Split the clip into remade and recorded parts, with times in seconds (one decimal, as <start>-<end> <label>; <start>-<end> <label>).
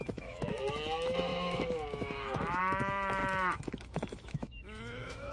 0.0-5.3 remade